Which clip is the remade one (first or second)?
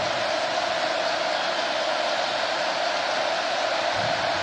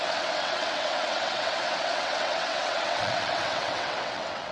second